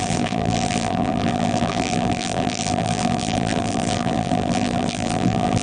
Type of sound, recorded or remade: remade